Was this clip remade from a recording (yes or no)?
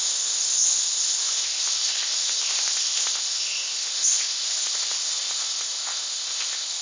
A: yes